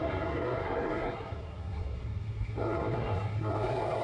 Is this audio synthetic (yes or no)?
yes